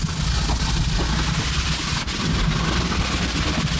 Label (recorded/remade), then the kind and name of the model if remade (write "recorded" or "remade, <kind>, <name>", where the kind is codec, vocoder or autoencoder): recorded